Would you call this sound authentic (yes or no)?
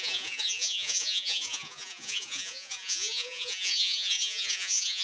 no